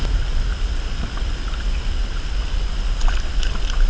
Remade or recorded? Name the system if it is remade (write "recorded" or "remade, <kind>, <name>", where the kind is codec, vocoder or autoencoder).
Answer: recorded